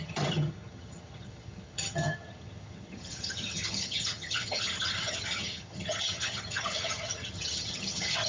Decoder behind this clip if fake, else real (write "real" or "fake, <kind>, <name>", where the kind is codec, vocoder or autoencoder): fake, vocoder, HiFi-GAN